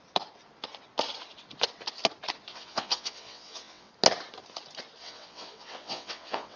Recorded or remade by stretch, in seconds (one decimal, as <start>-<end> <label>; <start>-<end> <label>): 0.0-2.5 recorded; 2.5-3.9 remade; 3.9-5.0 recorded; 5.0-6.6 remade